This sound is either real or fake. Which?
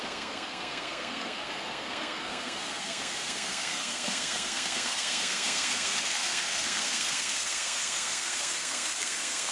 fake